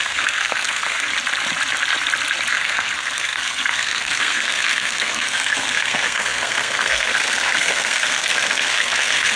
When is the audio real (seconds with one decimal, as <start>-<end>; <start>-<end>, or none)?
1.1-2.5